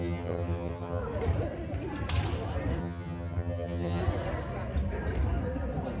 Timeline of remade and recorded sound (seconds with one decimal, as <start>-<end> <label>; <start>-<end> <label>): 0.0-1.0 remade; 1.0-2.8 recorded; 2.8-4.0 remade; 4.0-6.0 recorded